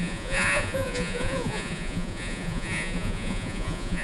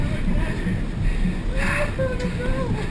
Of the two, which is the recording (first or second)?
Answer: second